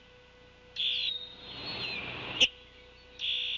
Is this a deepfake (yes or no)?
no